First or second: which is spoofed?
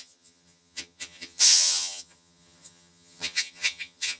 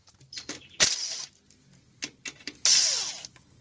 first